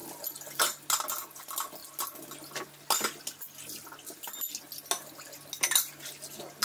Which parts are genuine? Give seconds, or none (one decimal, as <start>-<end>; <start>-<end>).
0.0-6.6